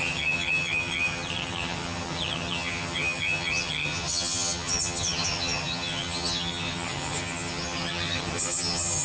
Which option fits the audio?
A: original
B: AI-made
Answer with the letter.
B